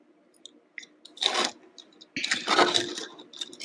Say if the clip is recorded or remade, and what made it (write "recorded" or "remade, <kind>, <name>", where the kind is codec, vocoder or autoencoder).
recorded